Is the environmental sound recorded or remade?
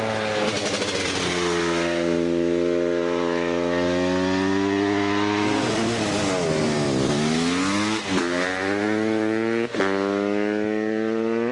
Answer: recorded